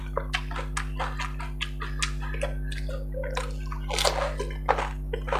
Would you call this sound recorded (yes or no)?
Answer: yes